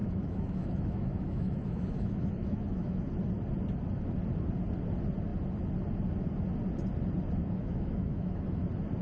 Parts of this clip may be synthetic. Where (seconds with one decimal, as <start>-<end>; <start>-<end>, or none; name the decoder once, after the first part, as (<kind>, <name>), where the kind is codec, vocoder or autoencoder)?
0.0-3.1 (autoencoder, DAC-VAE); 7.4-8.6